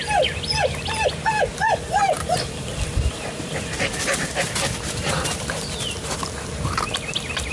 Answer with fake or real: real